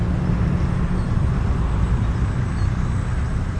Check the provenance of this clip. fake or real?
real